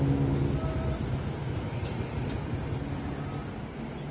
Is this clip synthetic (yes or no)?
no